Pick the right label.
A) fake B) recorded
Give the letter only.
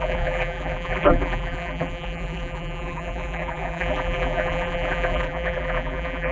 A